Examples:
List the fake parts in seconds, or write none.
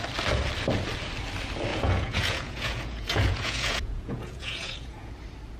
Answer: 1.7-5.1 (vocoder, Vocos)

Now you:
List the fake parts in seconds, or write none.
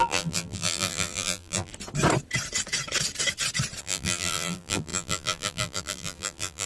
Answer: 0.0-1.7 (vocoder, BigVGAN v2); 3.8-6.7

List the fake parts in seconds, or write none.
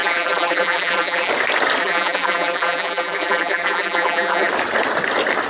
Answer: 0.0-1.3 (vocoder, BigVGAN v2); 1.8-4.5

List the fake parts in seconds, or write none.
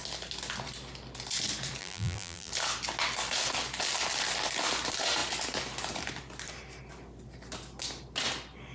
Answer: 1.8-2.5 (vocoder, BigVGAN v2)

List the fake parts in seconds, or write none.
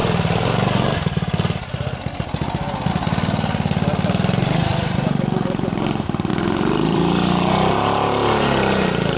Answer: 4.7-5.6 (vocoder, BigVGAN v2); 6.3-7.7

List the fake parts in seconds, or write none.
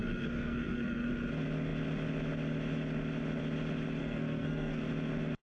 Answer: 0.0-1.1 (codec, SNAC); 4.0-4.8